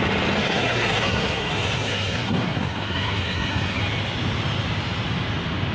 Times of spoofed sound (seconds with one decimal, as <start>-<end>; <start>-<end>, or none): 0.4-3.8